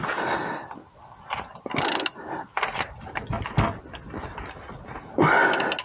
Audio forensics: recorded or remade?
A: recorded